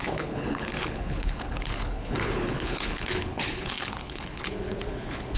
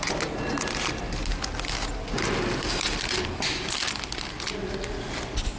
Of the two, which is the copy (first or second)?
first